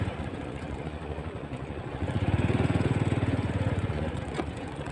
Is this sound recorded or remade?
remade